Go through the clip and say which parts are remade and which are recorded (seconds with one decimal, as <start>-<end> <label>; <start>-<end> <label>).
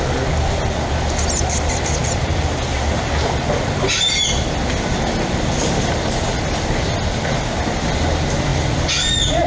0.0-2.0 recorded; 2.0-3.0 remade; 3.0-9.5 recorded